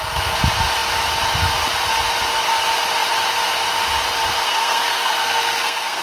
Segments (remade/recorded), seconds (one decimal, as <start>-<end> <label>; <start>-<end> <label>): 0.0-4.4 recorded; 4.4-6.0 remade